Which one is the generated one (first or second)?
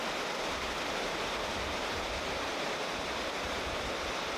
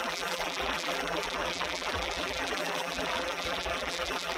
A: second